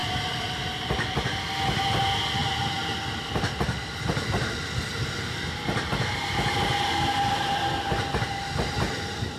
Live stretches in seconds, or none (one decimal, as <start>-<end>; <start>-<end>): 0.0-9.4